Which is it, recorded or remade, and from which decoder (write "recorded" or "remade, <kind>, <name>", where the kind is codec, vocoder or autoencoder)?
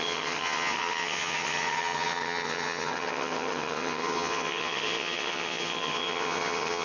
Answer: remade, vocoder, HiFi-GAN